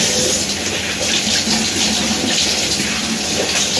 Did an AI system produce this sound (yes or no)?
no